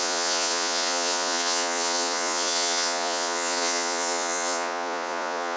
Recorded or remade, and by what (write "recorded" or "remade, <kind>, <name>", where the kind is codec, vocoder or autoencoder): remade, vocoder, Vocos